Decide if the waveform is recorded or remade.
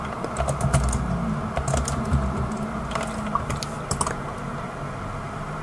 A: recorded